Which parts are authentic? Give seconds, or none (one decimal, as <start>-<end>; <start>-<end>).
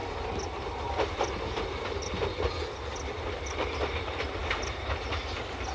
0.0-5.7